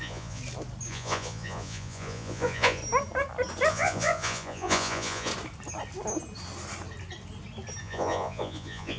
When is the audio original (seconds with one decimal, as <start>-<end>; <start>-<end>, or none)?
0.4-0.9; 2.8-3.7; 5.3-7.8